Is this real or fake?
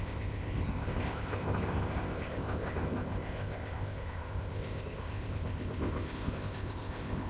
fake